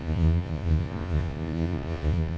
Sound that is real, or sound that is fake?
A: fake